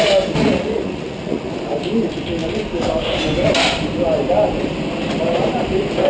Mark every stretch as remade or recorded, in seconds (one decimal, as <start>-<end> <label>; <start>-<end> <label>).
0.0-0.4 recorded; 0.4-1.6 remade; 1.6-6.1 recorded